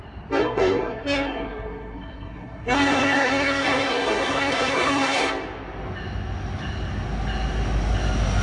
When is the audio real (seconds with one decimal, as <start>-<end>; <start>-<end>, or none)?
0.0-0.4; 5.3-8.4